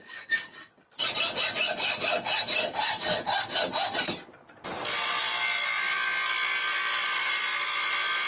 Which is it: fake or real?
real